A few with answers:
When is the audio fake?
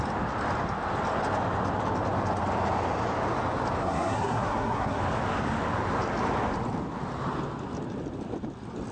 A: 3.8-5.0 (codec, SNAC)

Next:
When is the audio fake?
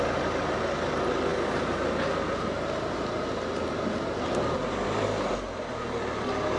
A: none